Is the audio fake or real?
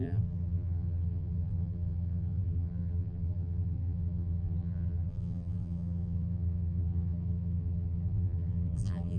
fake